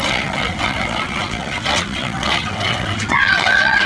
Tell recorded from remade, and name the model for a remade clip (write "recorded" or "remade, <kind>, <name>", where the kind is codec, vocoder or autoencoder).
remade, vocoder, WaveNeXt